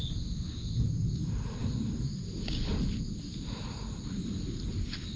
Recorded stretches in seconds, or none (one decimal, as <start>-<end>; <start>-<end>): 0.0-5.2